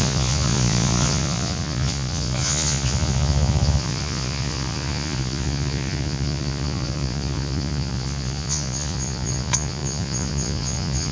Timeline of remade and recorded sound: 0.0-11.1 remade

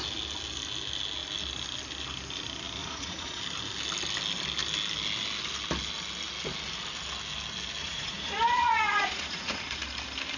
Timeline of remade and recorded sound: 0.0-2.8 recorded; 2.8-3.4 remade; 3.4-7.8 recorded; 7.8-9.8 remade; 9.8-10.4 recorded